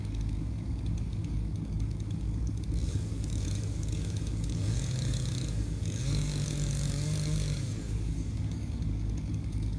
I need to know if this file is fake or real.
fake